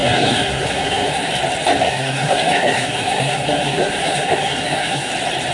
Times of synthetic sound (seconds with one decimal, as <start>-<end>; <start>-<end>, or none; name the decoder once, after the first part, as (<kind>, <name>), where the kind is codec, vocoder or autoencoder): 0.0-1.3 (codec, SNAC); 1.8-5.1